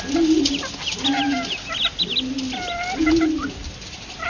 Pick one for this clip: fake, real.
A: real